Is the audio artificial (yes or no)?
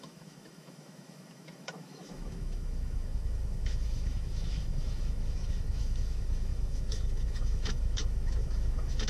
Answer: yes